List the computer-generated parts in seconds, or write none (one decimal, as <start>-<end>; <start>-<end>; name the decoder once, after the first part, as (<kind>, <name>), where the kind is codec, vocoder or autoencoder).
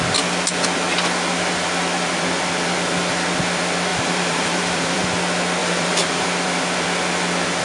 3.9-5.0 (vocoder, BigVGAN v2); 5.6-6.3